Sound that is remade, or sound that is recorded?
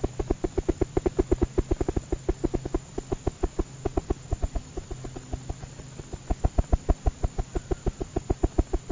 recorded